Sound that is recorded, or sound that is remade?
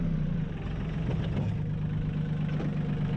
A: recorded